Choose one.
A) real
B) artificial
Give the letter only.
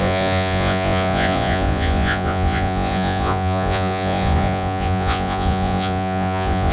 B